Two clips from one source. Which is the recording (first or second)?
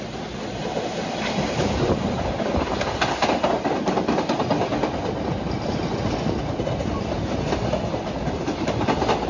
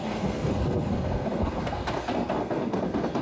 first